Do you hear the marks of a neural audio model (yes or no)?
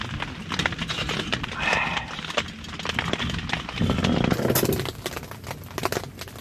no